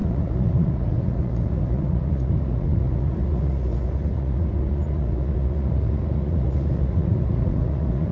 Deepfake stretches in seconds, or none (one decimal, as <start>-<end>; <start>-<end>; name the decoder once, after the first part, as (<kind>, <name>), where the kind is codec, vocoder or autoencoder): 0.0-8.1 (vocoder, Vocos)